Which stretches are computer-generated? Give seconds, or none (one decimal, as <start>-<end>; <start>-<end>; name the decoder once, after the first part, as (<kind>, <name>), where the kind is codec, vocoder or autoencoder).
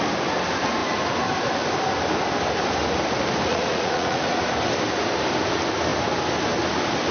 3.5-4.4 (vocoder, Vocos)